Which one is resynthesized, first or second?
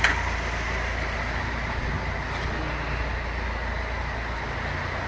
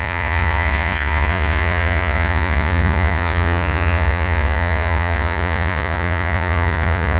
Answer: second